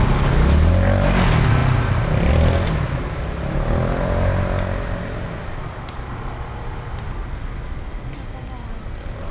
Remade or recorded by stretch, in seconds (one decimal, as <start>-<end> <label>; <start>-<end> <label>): 0.0-9.3 recorded